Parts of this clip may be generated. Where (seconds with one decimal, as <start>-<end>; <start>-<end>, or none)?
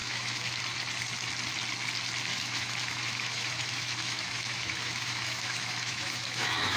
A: 0.0-0.6; 2.3-6.8